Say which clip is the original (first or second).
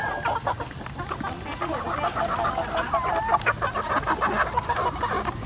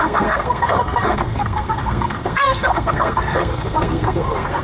first